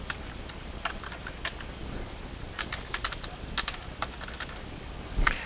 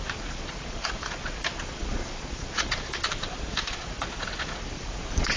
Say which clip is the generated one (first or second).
second